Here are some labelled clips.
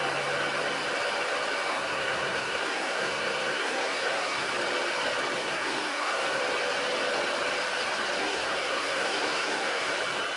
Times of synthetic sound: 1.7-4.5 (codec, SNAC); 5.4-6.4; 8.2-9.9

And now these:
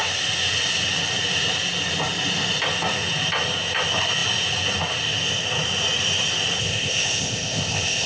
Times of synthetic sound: 6.6-8.1 (codec, ZipCodec)

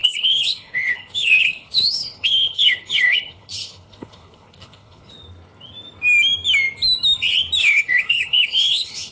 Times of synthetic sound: 0.0-5.1 (codec, HILCodec); 7.6-9.1

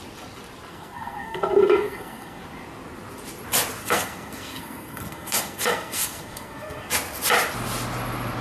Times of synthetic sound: 0.7-2.4 (codec, SNAC); 3.8-6.9